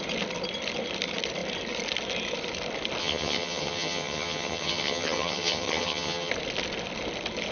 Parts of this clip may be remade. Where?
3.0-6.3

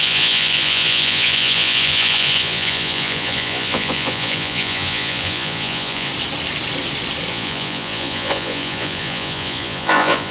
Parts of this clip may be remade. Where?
0.0-6.1; 7.3-10.3

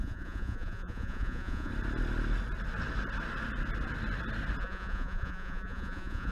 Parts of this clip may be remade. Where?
0.0-1.7; 4.6-6.3

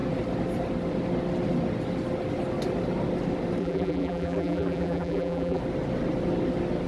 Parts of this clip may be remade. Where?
3.6-5.6

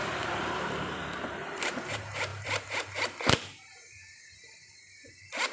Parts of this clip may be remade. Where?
0.0-5.5

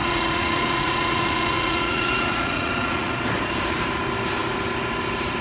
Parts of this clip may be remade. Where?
0.0-3.1